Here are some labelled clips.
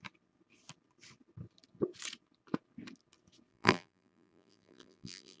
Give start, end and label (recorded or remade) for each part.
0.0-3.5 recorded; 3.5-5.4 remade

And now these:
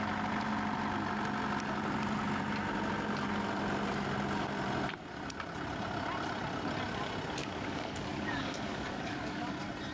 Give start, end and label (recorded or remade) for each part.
0.0-7.4 recorded; 7.4-9.5 remade; 9.5-9.9 recorded

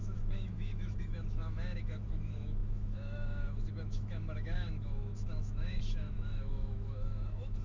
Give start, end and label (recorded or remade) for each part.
0.0-7.6 remade

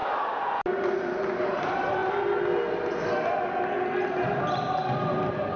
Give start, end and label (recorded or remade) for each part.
0.0-5.6 recorded

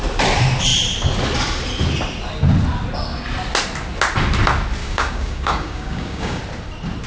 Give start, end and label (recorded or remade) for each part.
0.0-4.8 recorded; 4.8-6.4 remade; 6.4-7.1 recorded

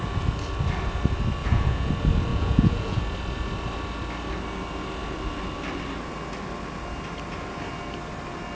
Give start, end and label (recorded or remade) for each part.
0.0-1.4 recorded; 1.4-1.9 remade; 1.9-2.3 recorded; 2.3-3.0 remade; 3.0-8.5 recorded

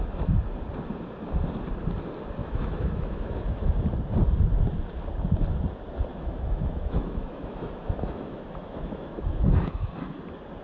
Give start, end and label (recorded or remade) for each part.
0.0-2.4 recorded; 2.4-3.7 remade; 3.7-6.1 recorded; 6.1-9.9 remade; 9.9-10.6 recorded